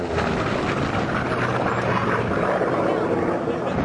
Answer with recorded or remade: recorded